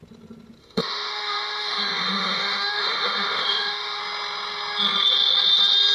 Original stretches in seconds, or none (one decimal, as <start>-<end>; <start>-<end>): 0.0-0.6; 4.0-5.9